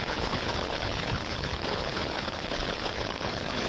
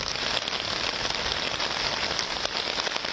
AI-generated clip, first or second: first